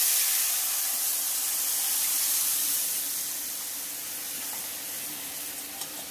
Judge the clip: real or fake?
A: real